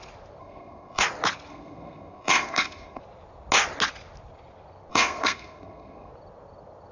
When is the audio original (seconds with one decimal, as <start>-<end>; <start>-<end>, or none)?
0.0-0.4; 1.0-1.5; 3.0-4.9; 6.1-6.9